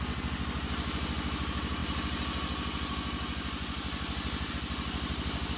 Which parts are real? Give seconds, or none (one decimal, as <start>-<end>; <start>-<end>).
0.0-5.6